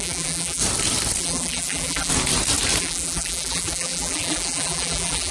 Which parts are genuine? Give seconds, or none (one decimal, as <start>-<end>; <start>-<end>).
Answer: 0.6-1.2; 2.1-2.8